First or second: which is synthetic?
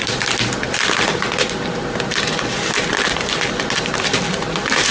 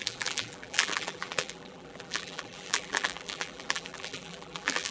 second